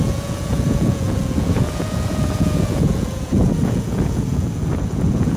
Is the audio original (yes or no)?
no